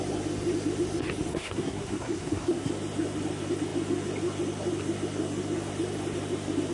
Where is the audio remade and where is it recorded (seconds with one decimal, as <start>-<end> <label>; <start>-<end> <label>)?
0.0-1.3 recorded; 1.3-2.7 remade; 2.7-6.7 recorded